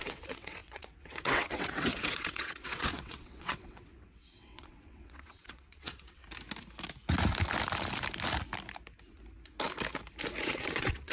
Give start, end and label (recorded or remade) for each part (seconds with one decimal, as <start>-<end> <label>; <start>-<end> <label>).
0.0-6.2 remade; 6.2-10.4 recorded; 10.4-11.1 remade